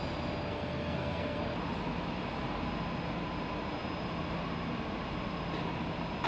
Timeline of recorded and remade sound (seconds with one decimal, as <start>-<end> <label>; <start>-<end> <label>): 0.0-0.5 recorded; 0.5-1.4 remade; 1.4-6.3 recorded